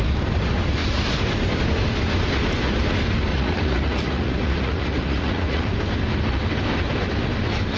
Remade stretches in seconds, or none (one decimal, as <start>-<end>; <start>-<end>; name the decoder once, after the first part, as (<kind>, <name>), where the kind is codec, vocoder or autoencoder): 3.3-5.7 (vocoder, Vocos)

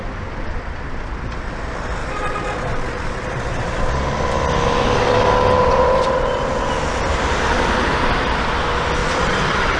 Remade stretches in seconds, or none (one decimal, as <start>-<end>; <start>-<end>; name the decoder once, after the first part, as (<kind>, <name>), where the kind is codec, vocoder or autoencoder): 2.0-3.9 (vocoder, Vocos); 5.6-6.7; 9.0-9.8

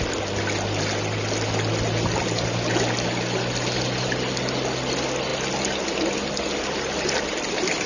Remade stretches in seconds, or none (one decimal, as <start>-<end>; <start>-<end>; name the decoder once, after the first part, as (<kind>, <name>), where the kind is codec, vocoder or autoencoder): none

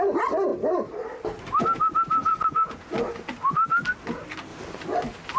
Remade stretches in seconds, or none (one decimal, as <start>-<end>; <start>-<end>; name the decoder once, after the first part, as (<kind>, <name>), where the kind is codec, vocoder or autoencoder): 2.2-2.9 (vocoder, Vocos)